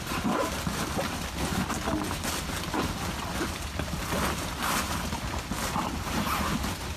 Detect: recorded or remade recorded